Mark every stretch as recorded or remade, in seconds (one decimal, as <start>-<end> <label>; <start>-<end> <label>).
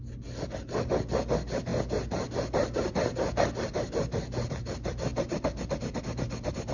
0.0-6.7 recorded